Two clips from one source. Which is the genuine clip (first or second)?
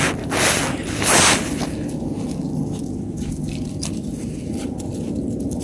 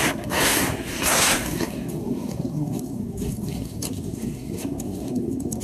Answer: first